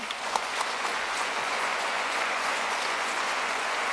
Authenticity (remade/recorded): remade